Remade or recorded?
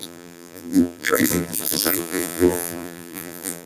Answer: remade